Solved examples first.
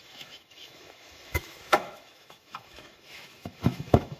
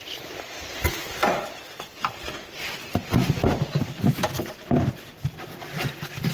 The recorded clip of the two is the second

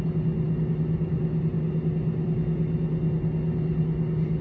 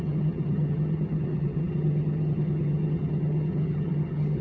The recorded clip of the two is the first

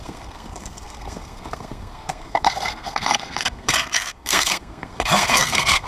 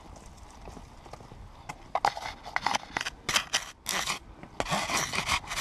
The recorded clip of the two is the second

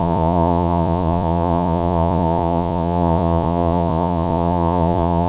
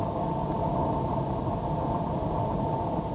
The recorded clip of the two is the second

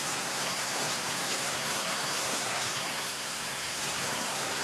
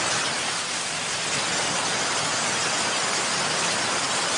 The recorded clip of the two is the second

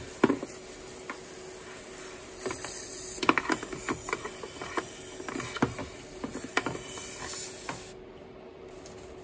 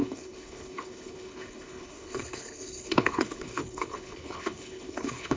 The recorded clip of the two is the first